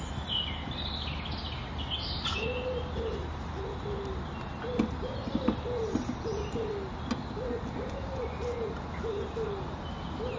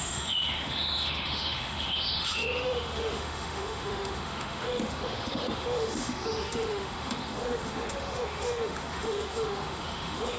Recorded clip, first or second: first